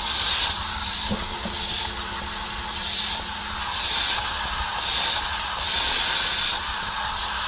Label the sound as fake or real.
real